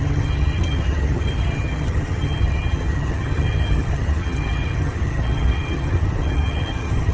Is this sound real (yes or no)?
no